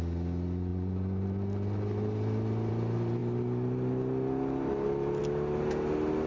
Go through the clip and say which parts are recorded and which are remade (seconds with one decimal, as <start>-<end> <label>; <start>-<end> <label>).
0.0-6.3 recorded